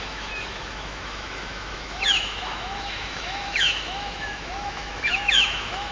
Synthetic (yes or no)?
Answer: yes